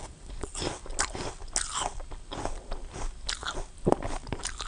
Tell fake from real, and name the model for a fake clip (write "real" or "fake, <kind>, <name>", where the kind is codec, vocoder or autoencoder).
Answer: real